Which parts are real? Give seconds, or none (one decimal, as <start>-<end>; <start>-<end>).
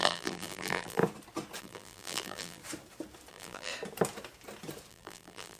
1.0-1.6; 2.6-3.3; 3.7-4.9